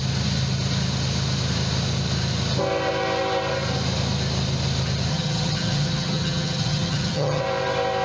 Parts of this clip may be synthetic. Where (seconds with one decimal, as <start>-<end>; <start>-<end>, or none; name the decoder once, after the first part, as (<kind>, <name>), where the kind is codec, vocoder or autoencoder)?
5.1-7.4 (vocoder, HiFi-GAN)